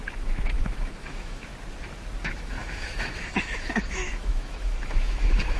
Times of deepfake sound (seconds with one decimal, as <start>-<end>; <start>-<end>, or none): 0.0-1.5; 2.2-5.6